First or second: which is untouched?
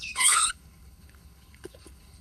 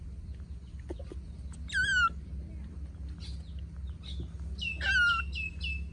second